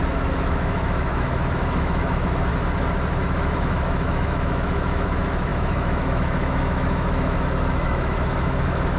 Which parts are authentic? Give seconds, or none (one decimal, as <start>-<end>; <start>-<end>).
2.5-3.2